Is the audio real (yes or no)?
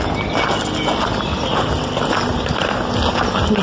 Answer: yes